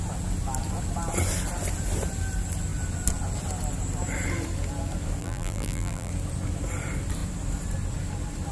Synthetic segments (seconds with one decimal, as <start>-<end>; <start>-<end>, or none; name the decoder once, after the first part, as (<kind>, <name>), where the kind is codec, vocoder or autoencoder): 5.2-6.1 (vocoder, BigVGAN v2)